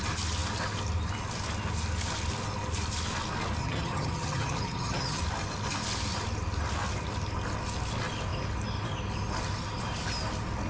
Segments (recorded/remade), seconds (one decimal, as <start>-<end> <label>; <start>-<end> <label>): 0.0-3.6 recorded; 3.6-5.2 remade; 5.2-10.7 recorded